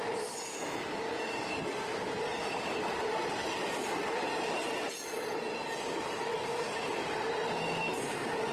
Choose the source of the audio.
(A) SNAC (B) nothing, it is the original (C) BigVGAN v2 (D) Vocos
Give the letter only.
B